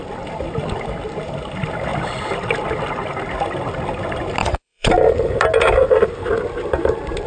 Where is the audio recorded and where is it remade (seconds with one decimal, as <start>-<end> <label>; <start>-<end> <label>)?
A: 0.0-4.4 recorded; 4.4-4.9 remade; 4.9-7.3 recorded